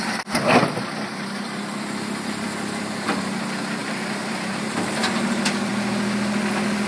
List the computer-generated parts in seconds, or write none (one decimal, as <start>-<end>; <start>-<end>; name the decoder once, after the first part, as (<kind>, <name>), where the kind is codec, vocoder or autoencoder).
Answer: 3.8-5.1 (vocoder, BigVGAN v2)